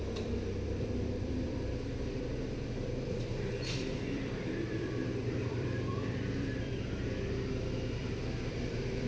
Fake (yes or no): yes